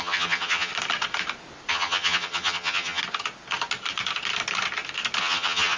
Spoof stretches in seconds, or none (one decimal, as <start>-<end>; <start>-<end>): 0.0-0.7; 1.7-3.0; 5.2-5.8